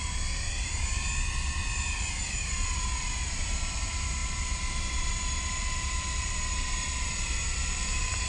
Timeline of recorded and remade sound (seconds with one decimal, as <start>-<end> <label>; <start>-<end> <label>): 0.0-8.3 remade